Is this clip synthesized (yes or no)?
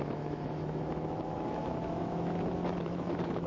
yes